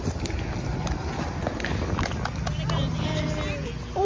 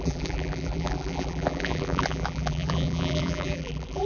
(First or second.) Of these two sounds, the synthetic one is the second